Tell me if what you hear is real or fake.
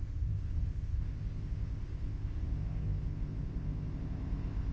fake